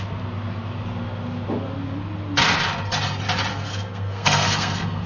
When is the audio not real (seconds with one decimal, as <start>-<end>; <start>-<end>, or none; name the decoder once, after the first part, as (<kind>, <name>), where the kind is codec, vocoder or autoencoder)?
3.5-5.1 (codec, SNAC)